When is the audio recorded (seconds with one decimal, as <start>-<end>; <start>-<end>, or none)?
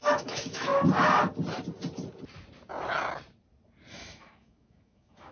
0.7-3.9